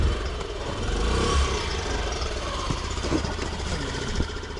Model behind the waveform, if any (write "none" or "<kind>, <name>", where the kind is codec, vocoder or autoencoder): vocoder, BigVGAN v2